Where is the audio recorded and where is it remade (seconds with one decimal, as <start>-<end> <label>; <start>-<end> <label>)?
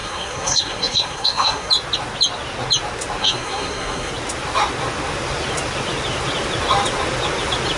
0.0-1.7 remade; 1.7-3.2 recorded; 3.2-4.1 remade; 4.1-7.8 recorded